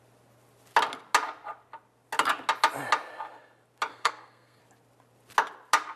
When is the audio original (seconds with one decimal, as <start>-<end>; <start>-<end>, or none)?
0.0-3.9; 4.6-6.0